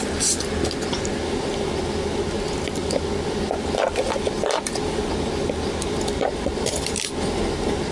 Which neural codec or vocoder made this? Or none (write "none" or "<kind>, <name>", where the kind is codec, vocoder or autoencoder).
none